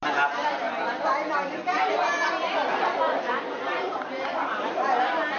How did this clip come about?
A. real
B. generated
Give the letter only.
A